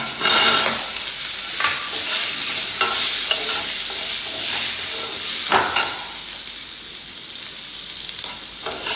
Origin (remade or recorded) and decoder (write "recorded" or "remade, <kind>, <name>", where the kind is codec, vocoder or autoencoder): recorded